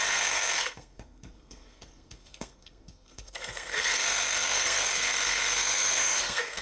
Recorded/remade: remade